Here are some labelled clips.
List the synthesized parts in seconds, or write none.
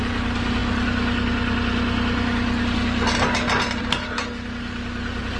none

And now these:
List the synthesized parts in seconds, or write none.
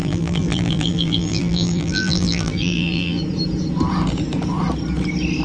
0.0-3.2